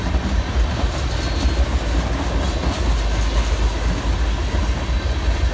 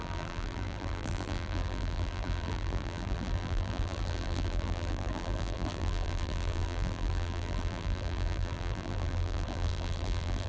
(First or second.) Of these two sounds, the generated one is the second